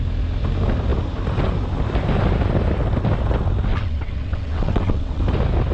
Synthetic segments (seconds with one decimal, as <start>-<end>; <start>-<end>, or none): 3.7-5.2